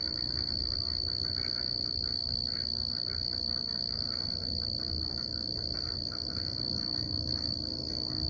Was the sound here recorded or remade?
remade